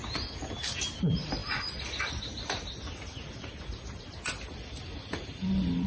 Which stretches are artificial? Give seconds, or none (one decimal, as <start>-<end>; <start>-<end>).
none